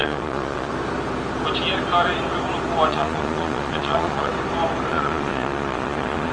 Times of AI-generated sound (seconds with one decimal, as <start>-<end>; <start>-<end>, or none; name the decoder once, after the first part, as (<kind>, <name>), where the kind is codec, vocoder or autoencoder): 0.0-0.7 (vocoder, Vocos); 2.9-4.3; 4.9-6.3